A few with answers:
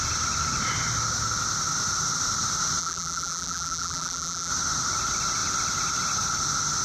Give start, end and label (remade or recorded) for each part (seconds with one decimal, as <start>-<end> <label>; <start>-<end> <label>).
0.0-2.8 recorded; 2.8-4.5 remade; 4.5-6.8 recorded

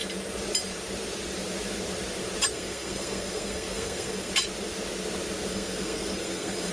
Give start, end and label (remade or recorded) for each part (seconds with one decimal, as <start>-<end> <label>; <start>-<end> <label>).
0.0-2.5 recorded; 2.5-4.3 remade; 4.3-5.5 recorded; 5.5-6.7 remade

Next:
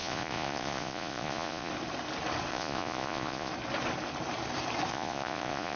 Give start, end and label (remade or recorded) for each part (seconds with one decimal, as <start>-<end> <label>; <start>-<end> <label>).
0.0-1.7 remade; 1.7-2.5 recorded; 2.5-3.5 remade; 3.5-4.9 recorded; 4.9-5.8 remade

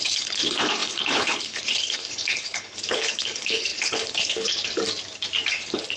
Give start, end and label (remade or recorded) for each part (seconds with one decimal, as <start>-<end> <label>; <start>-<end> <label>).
0.0-4.8 remade; 4.8-5.5 recorded; 5.5-6.0 remade

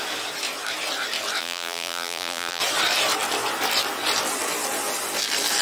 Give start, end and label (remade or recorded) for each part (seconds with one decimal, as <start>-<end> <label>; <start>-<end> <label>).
0.0-1.4 recorded; 1.4-2.6 remade; 2.6-5.6 recorded

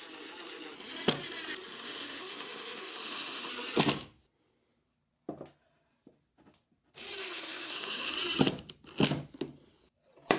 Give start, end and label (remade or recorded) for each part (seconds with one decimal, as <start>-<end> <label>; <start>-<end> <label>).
0.0-1.7 recorded; 1.7-3.5 remade; 3.5-7.2 recorded; 7.2-8.1 remade; 8.1-10.4 recorded

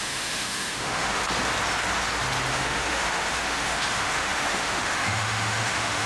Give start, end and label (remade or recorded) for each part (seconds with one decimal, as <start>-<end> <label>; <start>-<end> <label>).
0.0-1.2 remade; 1.2-2.5 recorded; 2.5-6.1 remade